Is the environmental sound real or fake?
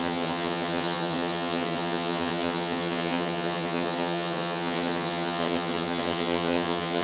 fake